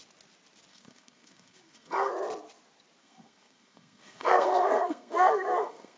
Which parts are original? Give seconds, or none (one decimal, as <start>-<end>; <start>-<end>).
0.0-0.7; 2.1-3.0